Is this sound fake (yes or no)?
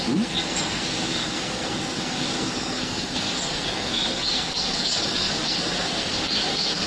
yes